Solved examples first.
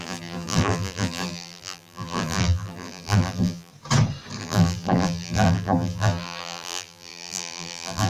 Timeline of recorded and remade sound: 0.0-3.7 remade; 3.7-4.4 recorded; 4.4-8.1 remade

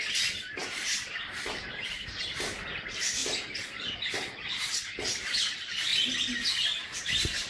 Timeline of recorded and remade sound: 0.0-3.2 remade; 3.2-4.1 recorded; 4.1-5.9 remade; 5.9-7.0 recorded; 7.0-7.5 remade

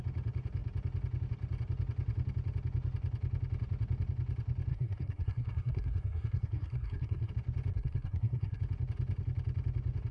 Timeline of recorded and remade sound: 0.0-4.7 recorded; 4.7-7.3 remade; 7.3-7.7 recorded; 7.7-8.6 remade; 8.6-10.1 recorded

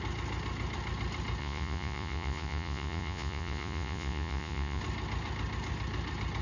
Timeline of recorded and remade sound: 0.0-1.4 recorded; 1.4-4.8 remade; 4.8-6.4 recorded

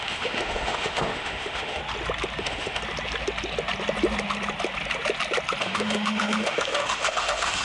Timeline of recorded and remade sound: 0.0-1.8 remade; 1.8-2.4 recorded; 2.4-2.8 remade; 2.8-5.6 recorded; 5.6-7.6 remade

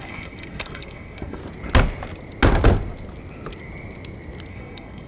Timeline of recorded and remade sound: 0.0-1.4 remade; 1.4-4.5 recorded; 4.5-5.1 remade